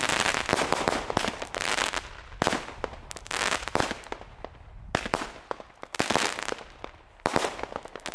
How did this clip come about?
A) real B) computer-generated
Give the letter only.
A